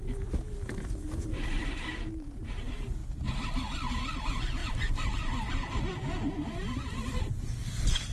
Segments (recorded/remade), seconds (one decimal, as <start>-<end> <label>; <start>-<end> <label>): 0.0-8.1 recorded